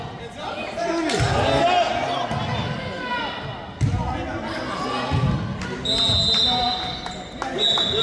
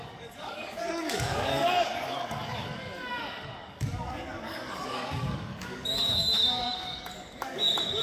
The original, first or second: first